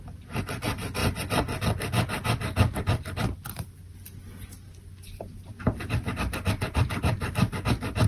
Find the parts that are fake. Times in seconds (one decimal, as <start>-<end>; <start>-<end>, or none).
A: 5.5-7.3